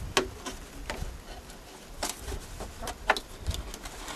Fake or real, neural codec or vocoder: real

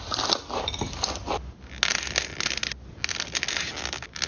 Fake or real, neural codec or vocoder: real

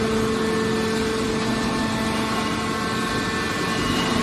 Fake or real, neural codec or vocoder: real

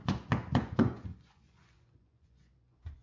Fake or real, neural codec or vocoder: fake, vocoder, Vocos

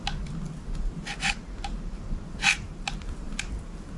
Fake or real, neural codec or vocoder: real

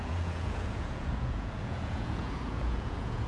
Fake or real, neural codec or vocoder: fake, vocoder, Vocos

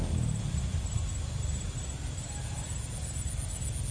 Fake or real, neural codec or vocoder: real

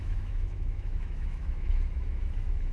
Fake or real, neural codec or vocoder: fake, autoencoder, DAC-VAE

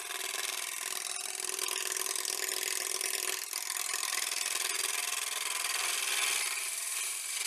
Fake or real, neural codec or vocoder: fake, vocoder, BigVGAN v2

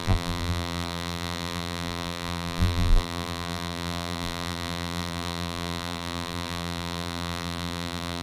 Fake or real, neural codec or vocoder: fake, vocoder, BigVGAN v2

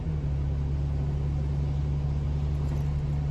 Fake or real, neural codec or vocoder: real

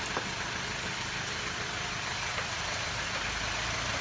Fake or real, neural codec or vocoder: real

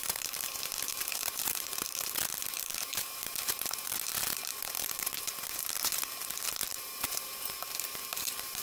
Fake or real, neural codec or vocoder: fake, vocoder, BigVGAN v2